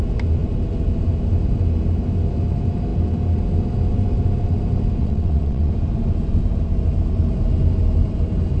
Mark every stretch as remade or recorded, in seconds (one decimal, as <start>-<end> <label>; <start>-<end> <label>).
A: 0.0-5.0 recorded; 5.0-5.7 remade; 5.7-8.6 recorded